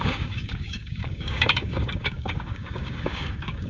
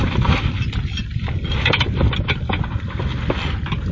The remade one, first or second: first